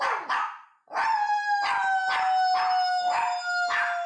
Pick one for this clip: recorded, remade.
recorded